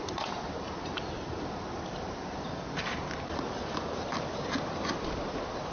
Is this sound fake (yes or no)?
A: no